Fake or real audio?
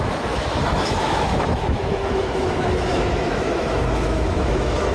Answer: fake